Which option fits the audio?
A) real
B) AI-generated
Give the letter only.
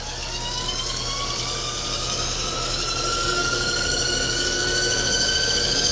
B